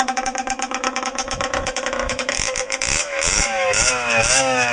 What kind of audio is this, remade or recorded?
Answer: remade